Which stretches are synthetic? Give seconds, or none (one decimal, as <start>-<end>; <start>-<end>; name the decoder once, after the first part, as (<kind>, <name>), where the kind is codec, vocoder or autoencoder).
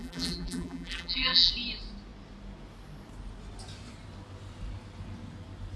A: 0.0-1.5 (vocoder, BigVGAN v2)